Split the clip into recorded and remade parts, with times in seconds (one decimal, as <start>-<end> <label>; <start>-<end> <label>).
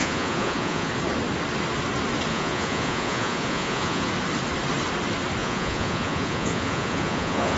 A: 0.0-0.9 remade; 0.9-2.3 recorded; 2.3-4.1 remade; 4.1-5.4 recorded; 5.4-7.6 remade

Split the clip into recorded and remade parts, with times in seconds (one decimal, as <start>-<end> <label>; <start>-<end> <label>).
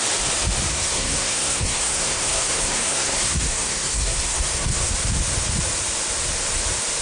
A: 0.0-0.7 recorded; 0.7-4.9 remade; 4.9-7.0 recorded